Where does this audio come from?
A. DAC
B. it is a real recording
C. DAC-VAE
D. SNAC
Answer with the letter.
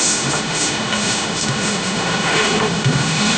C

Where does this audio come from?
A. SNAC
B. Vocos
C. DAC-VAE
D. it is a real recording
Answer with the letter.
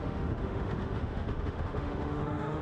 C